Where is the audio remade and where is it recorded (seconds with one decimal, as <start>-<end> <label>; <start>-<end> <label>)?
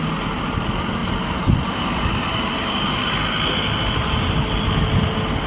0.0-5.5 recorded